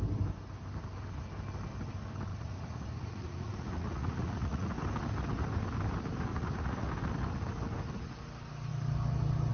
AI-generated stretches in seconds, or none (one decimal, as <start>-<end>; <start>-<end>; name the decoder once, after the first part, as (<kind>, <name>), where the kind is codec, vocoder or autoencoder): 2.3-4.7 (vocoder, Vocos); 6.3-6.9